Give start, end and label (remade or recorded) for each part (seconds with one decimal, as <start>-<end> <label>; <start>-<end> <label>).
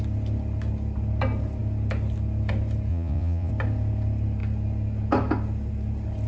0.0-2.9 recorded; 2.9-3.5 remade; 3.5-6.3 recorded